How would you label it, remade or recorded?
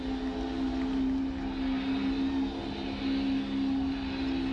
recorded